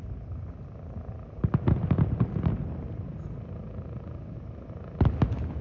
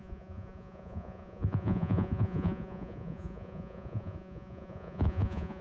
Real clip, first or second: first